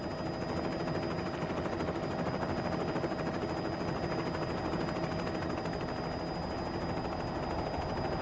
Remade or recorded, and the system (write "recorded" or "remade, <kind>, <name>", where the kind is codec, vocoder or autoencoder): recorded